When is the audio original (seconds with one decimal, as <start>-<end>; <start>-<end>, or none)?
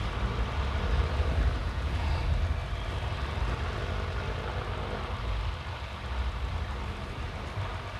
0.0-1.6; 2.1-8.0